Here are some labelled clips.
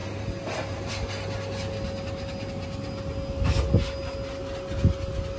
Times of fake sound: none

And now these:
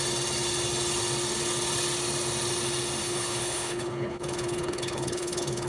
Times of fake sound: 3.0-5.7 (codec, HILCodec)

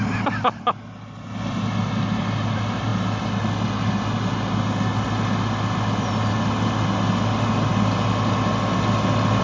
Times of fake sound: none